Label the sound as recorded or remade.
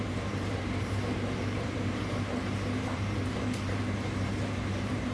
remade